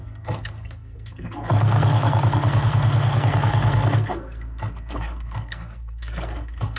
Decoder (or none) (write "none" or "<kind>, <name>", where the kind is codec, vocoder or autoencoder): codec, SNAC